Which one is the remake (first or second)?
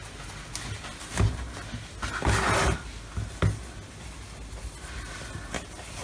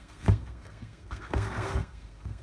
second